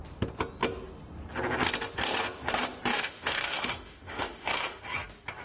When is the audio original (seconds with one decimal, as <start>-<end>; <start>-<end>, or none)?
0.0-2.9; 4.8-5.4